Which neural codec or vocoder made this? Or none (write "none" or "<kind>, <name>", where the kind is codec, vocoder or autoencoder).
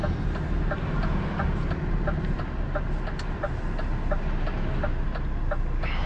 none